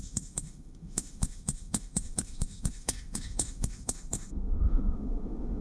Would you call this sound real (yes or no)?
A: no